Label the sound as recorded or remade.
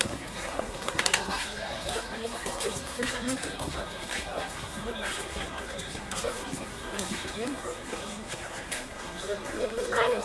remade